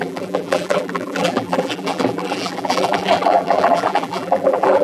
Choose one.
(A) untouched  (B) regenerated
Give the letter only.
B